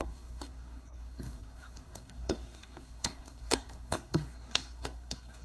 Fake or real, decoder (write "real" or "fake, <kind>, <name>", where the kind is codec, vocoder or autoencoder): fake, codec, SNAC